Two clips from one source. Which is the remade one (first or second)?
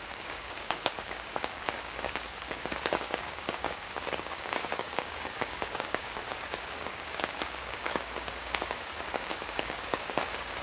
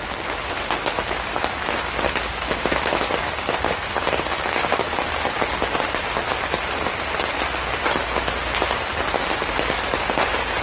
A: first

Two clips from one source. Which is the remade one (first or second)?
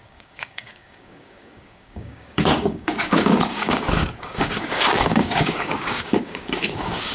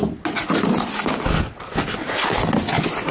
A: first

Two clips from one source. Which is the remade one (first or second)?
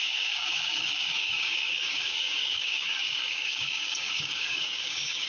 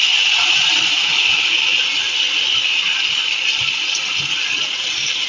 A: first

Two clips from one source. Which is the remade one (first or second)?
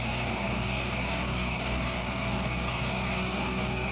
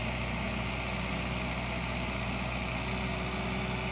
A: first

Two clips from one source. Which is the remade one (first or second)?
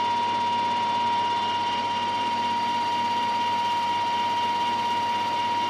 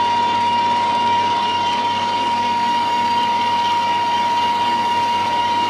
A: second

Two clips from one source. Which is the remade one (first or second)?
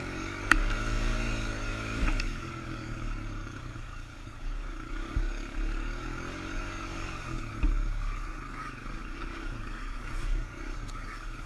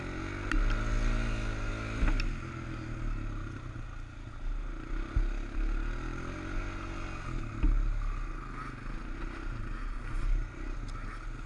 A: first